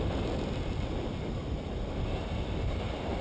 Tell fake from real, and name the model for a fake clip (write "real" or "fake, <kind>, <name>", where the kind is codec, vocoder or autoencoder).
real